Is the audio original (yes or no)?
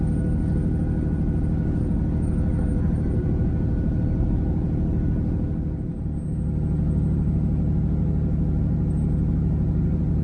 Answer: yes